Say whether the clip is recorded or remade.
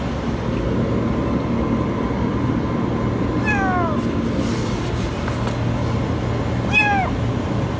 recorded